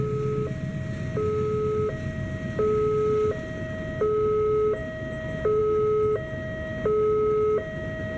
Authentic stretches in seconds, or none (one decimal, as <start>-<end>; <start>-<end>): 0.0-8.2